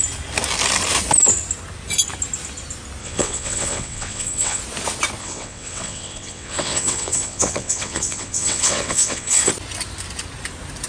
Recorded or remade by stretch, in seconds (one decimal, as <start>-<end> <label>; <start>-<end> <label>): 0.0-3.0 recorded; 3.0-4.6 remade; 4.6-5.2 recorded; 5.2-9.5 remade; 9.5-10.9 recorded